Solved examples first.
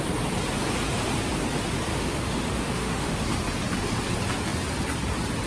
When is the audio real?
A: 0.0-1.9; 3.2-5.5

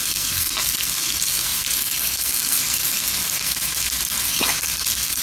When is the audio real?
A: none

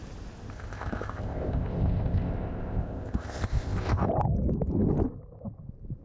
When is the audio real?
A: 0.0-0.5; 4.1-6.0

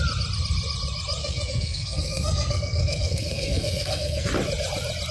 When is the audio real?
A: 0.0-1.2; 4.3-5.1

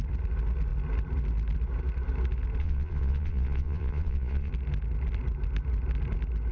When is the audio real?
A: 0.0-2.6; 4.5-6.5